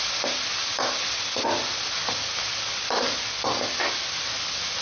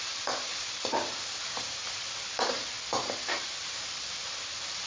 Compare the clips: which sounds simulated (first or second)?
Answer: second